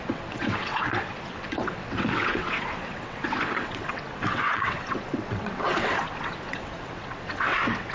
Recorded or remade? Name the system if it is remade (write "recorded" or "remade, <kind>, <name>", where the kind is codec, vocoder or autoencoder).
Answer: remade, vocoder, WaveNeXt